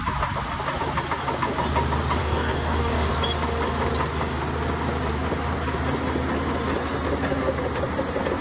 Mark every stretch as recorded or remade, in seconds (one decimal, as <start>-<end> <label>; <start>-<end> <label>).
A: 0.0-2.2 recorded; 2.2-3.1 remade; 3.1-8.4 recorded